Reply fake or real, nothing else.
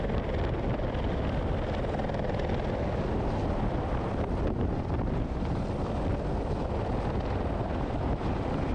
real